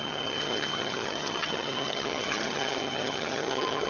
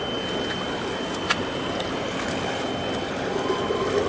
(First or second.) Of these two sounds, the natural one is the second